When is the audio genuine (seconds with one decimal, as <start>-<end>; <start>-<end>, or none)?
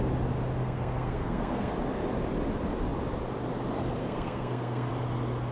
0.0-0.6; 1.7-4.0; 4.9-5.5